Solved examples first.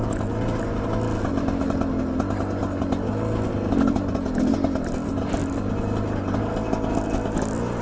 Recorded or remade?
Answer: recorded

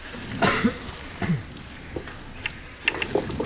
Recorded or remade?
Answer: recorded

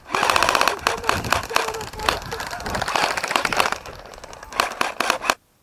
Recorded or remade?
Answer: recorded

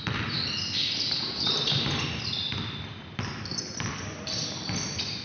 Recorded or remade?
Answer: recorded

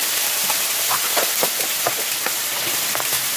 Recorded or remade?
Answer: recorded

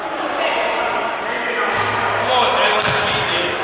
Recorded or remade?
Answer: recorded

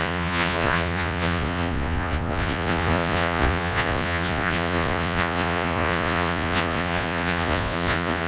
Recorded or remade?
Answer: remade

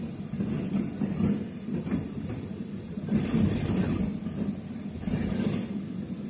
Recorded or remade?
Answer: recorded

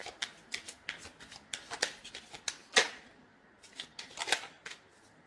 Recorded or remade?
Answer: recorded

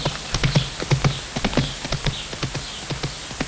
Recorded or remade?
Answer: recorded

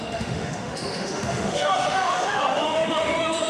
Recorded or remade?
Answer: remade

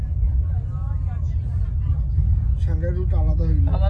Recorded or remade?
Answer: recorded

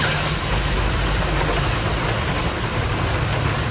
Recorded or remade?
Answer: recorded